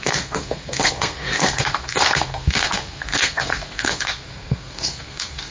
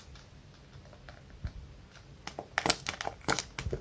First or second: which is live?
second